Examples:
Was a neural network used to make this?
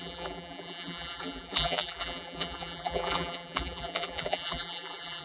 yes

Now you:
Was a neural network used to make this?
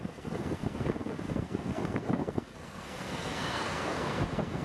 yes